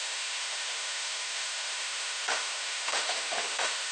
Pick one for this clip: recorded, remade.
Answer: remade